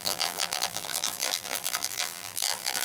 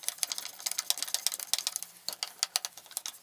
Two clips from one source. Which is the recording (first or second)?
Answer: second